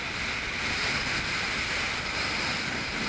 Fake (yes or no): no